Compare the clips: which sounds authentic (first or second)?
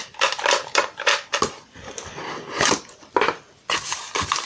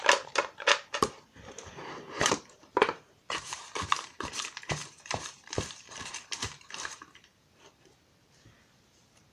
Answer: first